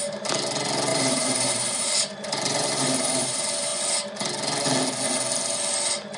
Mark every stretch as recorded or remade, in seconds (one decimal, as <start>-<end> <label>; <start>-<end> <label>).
0.0-0.9 recorded; 0.9-3.3 remade; 3.3-6.2 recorded